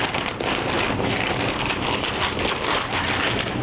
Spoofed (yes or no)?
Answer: no